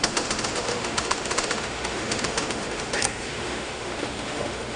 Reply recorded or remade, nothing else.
remade